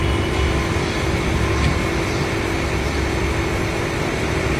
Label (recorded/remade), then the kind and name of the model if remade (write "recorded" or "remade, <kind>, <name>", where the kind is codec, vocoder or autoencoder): recorded